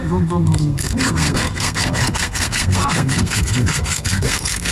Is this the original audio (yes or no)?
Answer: no